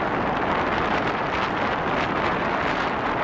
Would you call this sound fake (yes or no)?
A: no